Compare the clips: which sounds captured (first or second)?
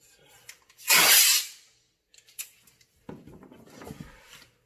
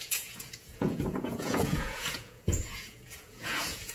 first